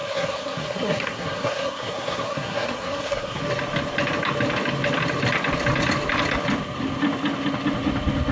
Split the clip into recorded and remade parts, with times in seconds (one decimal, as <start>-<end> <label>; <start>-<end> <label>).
0.0-3.4 remade; 3.4-8.3 recorded